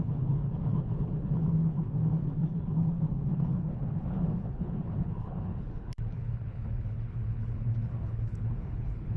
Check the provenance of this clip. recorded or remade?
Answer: remade